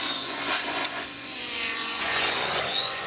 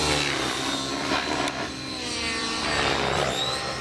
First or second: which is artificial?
first